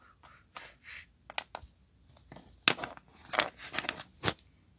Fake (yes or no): no